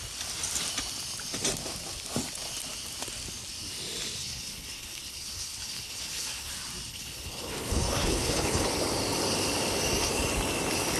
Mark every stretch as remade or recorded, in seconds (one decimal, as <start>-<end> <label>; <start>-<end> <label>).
0.0-4.2 recorded; 4.2-6.5 remade; 6.5-6.9 recorded; 6.9-8.7 remade; 8.7-11.0 recorded